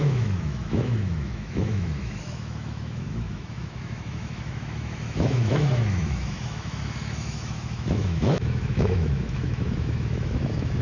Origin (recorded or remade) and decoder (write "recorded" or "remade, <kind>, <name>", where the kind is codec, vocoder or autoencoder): remade, autoencoder, DAC-VAE